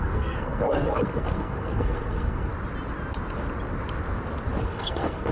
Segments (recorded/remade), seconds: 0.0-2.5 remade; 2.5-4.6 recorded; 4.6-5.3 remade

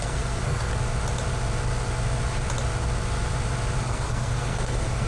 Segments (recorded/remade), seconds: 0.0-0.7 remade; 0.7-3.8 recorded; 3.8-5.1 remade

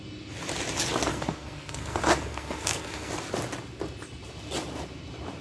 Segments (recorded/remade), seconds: 0.0-1.1 recorded; 1.1-3.1 remade; 3.1-5.4 recorded

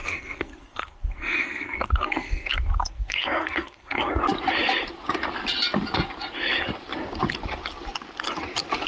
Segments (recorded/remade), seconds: 0.0-4.1 remade; 4.1-8.9 recorded